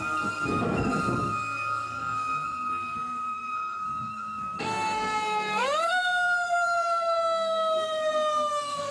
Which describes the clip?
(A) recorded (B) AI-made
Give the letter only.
B